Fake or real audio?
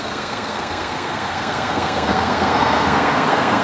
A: fake